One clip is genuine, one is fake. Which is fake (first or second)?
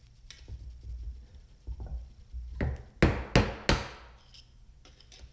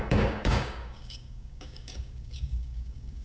second